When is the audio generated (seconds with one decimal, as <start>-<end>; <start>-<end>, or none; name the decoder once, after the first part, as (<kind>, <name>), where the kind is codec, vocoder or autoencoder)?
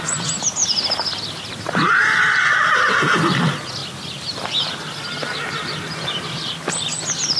none